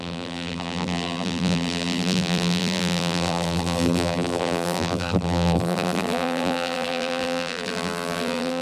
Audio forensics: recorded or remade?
remade